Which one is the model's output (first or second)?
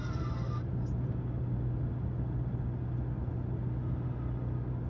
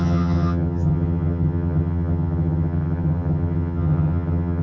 second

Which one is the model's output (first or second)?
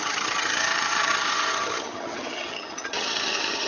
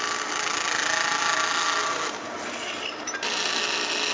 first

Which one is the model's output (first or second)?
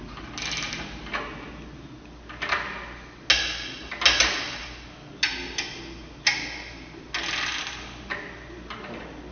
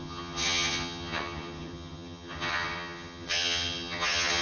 second